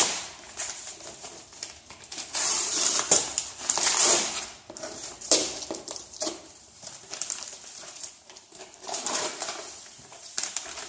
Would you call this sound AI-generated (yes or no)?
yes